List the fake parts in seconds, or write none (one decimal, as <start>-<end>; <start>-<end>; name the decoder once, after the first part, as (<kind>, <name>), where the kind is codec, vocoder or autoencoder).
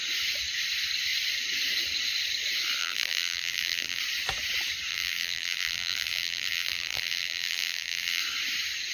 2.8-4.0 (vocoder, BigVGAN v2); 4.9-8.2